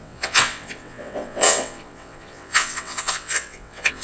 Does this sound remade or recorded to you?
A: remade